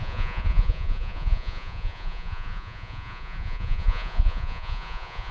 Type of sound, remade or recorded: remade